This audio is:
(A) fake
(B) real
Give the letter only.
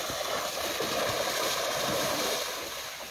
B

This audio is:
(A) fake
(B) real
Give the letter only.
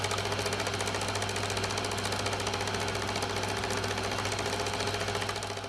B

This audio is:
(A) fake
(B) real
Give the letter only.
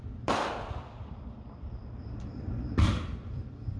A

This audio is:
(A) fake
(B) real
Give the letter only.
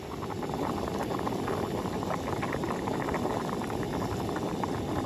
B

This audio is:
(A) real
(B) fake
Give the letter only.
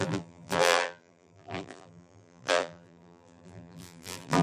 B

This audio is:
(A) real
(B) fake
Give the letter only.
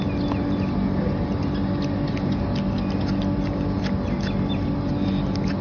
A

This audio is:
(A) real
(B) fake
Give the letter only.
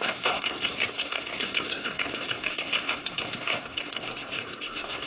B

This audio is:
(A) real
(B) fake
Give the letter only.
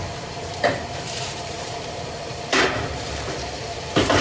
B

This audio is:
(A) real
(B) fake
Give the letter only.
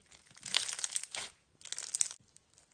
A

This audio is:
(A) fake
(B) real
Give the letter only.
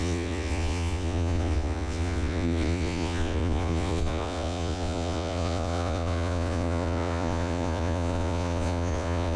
A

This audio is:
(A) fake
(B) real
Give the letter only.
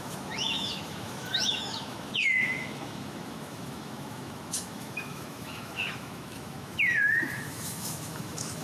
A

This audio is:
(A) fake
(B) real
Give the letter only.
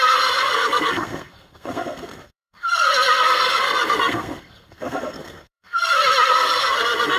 A